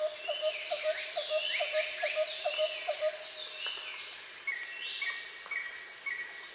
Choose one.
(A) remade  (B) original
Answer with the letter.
B